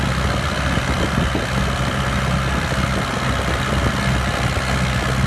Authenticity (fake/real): real